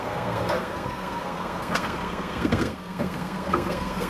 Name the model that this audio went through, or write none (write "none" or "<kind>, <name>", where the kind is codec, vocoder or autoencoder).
codec, SNAC